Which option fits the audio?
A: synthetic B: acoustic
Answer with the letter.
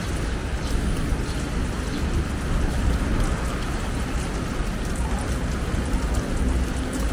B